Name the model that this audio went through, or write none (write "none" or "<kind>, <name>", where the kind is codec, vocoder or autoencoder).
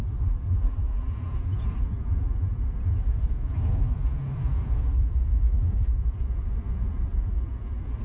none